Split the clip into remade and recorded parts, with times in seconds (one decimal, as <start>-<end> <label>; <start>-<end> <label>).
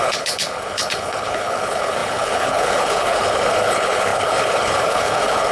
0.0-5.5 remade